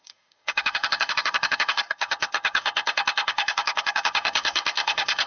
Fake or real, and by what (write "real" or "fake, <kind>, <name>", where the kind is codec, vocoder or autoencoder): fake, codec, SNAC